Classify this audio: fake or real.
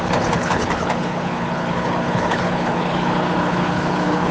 fake